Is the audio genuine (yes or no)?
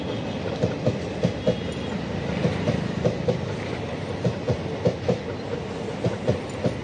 yes